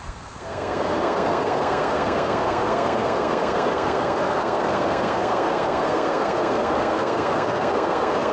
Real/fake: fake